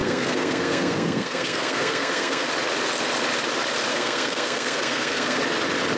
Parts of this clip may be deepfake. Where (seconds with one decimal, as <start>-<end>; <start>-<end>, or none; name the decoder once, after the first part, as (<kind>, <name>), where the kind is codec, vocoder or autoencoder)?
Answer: 0.0-2.5 (codec, SNAC); 3.9-5.4